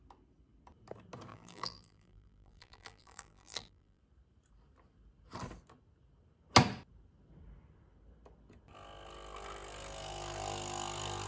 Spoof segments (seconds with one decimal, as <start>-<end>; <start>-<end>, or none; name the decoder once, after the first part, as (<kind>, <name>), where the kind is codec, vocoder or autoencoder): 1.3-4.0 (vocoder, BigVGAN v2)